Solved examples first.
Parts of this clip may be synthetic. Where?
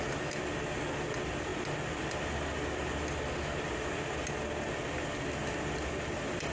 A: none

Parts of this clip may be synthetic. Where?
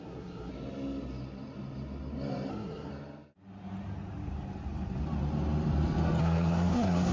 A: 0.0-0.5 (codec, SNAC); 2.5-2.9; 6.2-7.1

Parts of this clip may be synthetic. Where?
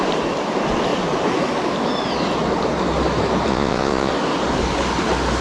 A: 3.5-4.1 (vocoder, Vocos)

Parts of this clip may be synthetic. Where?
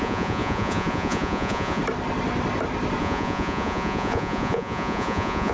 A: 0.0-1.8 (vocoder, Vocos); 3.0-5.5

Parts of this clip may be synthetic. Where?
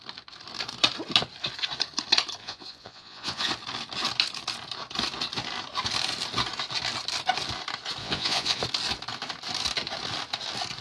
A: 2.4-3.5 (vocoder, Vocos); 8.0-8.6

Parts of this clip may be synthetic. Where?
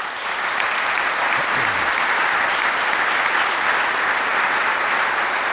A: none